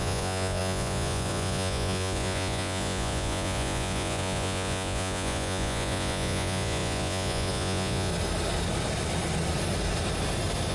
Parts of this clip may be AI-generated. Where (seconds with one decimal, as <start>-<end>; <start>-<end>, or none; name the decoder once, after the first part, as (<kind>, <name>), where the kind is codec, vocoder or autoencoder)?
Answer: 0.0-8.1 (vocoder, Vocos)